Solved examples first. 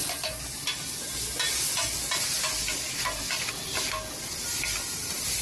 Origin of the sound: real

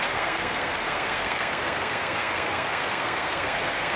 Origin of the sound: fake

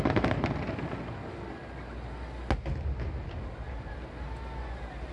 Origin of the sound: real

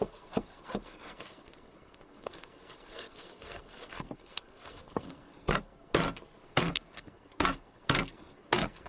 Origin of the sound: fake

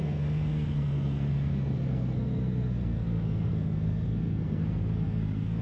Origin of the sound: fake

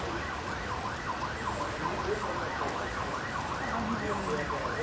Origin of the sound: real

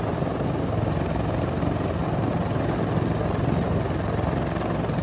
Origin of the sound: real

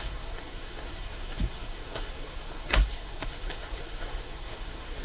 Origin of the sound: fake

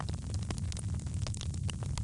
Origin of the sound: real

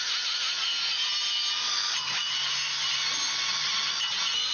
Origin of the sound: real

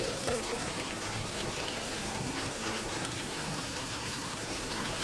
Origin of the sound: fake